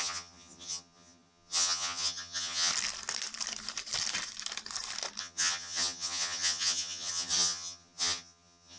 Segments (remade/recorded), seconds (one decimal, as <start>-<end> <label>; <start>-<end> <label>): 0.0-2.7 remade; 2.7-5.2 recorded; 5.2-8.8 remade